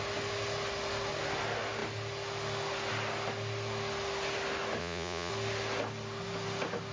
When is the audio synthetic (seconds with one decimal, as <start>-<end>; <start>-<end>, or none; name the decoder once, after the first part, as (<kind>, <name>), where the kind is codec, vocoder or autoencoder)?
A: 4.8-5.3 (vocoder, Vocos)